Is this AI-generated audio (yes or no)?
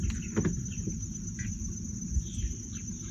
no